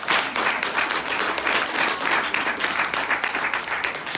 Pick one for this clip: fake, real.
real